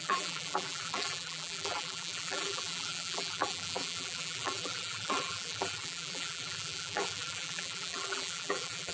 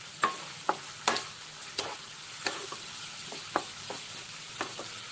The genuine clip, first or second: second